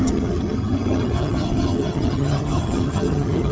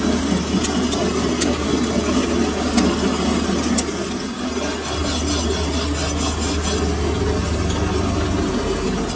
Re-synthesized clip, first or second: first